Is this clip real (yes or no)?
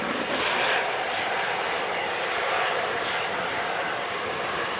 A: yes